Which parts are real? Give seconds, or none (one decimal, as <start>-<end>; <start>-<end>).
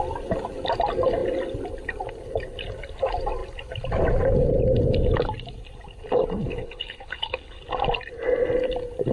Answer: 0.0-6.5; 7.6-9.1